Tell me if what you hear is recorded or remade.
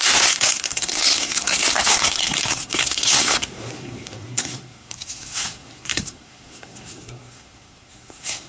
remade